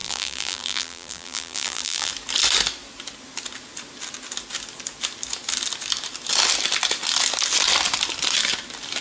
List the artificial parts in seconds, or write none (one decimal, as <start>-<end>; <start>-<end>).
0.0-2.1